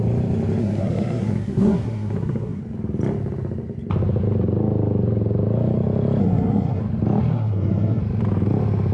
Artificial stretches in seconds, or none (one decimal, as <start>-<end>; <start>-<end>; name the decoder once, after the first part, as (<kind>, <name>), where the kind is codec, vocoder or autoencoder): 0.6-2.6 (codec, SNAC); 6.2-6.8; 7.3-8.0